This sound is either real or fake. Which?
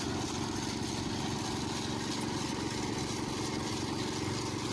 real